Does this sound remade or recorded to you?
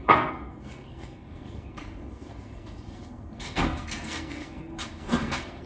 remade